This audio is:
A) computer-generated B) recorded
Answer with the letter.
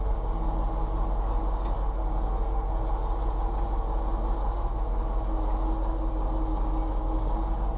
B